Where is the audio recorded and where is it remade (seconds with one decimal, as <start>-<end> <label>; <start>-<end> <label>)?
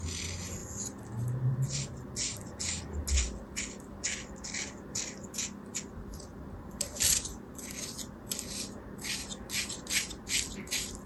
0.0-11.1 recorded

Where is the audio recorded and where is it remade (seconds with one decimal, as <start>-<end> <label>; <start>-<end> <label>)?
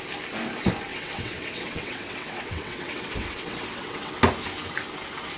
0.0-0.9 recorded; 0.9-4.1 remade; 4.1-5.4 recorded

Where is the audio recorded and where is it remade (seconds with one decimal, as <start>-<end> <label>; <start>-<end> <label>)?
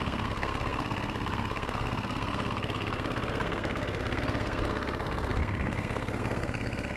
0.0-7.0 remade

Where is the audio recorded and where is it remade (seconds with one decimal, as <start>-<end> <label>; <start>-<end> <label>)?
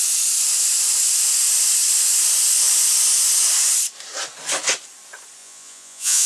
0.0-5.4 recorded; 5.4-6.3 remade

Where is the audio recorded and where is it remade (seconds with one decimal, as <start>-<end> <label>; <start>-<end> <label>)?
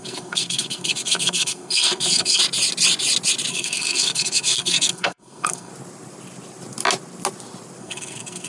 0.0-2.4 remade; 2.4-3.5 recorded; 3.5-5.7 remade; 5.7-7.8 recorded; 7.8-8.5 remade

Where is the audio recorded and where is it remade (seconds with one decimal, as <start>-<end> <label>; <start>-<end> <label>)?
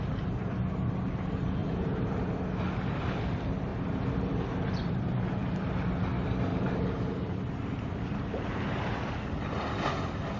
0.0-1.6 recorded; 1.6-2.3 remade; 2.3-3.7 recorded; 3.7-4.9 remade; 4.9-6.5 recorded; 6.5-9.4 remade; 9.4-10.4 recorded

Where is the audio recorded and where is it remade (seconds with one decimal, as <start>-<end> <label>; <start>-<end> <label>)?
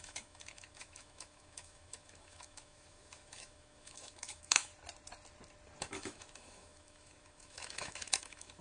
0.0-4.7 remade; 4.7-5.8 recorded; 5.8-8.6 remade